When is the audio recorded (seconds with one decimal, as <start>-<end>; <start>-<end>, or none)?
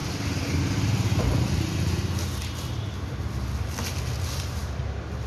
0.0-5.3